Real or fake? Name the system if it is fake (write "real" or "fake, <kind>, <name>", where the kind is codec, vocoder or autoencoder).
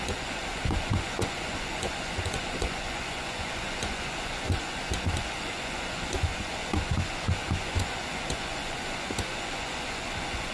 fake, vocoder, Vocos